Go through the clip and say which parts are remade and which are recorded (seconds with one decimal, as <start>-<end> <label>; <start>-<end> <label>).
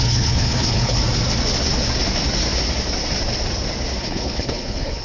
0.0-1.0 remade; 1.0-4.0 recorded; 4.0-5.0 remade